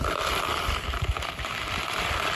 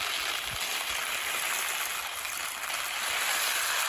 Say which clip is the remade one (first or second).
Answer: first